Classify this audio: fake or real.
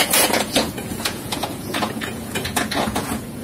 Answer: fake